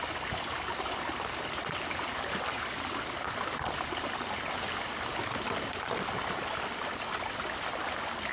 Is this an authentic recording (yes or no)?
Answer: yes